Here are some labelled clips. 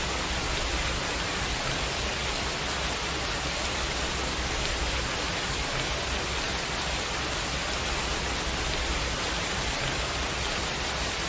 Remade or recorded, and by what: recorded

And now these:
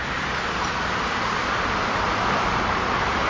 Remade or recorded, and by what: remade, vocoder, BigVGAN v2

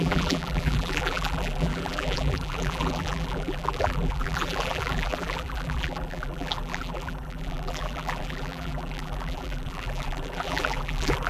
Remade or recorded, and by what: remade, vocoder, BigVGAN v2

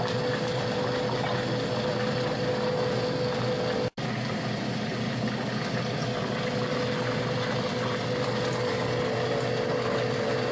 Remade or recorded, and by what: recorded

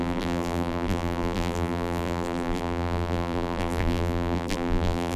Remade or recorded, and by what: remade, vocoder, BigVGAN v2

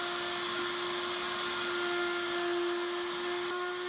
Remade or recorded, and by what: recorded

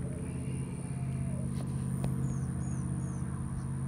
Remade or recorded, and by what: recorded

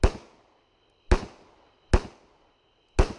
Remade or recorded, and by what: recorded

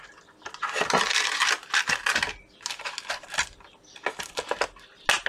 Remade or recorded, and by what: recorded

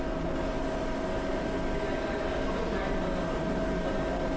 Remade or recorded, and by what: recorded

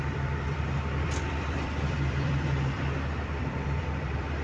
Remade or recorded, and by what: remade, vocoder, BigVGAN v2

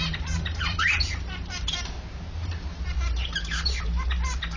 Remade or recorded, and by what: remade, vocoder, BigVGAN v2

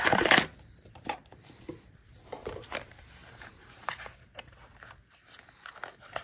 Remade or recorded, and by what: remade, vocoder, BigVGAN v2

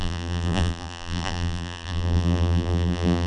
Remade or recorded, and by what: remade, vocoder, BigVGAN v2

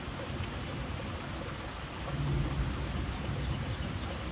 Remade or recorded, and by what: recorded